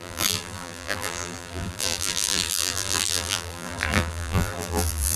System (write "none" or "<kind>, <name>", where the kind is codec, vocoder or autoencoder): vocoder, BigVGAN v2